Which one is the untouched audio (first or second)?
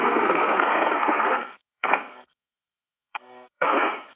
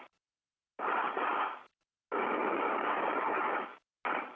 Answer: second